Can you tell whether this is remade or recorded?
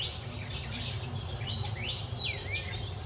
remade